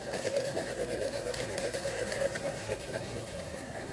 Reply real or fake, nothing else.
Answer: fake